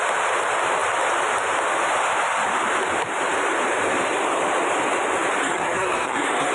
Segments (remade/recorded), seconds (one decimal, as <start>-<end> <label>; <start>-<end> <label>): 0.0-5.4 recorded; 5.4-6.5 remade